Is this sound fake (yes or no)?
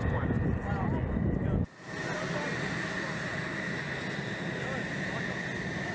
no